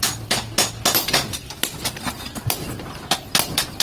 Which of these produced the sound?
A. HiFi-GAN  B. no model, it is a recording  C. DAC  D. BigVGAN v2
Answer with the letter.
B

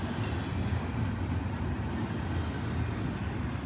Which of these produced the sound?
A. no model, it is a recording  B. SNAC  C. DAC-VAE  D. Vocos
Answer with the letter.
A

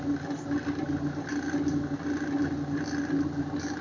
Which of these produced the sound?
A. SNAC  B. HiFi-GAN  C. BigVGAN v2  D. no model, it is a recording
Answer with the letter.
D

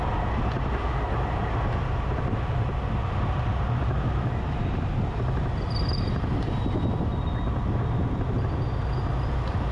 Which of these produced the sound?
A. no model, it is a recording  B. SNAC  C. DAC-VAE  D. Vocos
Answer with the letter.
A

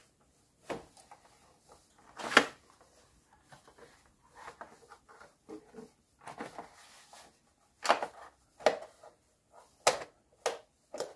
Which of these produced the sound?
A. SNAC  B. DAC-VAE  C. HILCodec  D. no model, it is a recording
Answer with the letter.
D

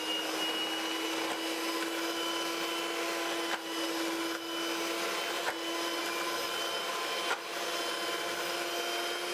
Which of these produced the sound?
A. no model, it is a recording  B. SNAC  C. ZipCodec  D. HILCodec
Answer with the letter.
A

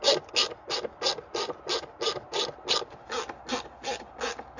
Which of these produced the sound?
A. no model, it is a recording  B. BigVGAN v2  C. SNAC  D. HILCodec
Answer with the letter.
A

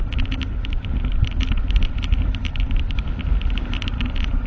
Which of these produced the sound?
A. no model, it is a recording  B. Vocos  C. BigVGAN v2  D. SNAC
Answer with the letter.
A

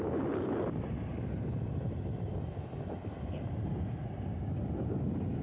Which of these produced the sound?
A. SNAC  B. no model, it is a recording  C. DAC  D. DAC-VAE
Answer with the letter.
B